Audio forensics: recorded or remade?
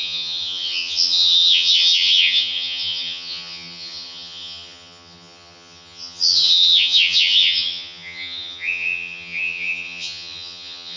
remade